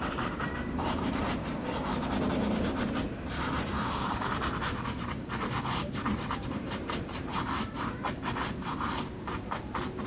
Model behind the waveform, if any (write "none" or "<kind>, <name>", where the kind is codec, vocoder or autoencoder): vocoder, BigVGAN v2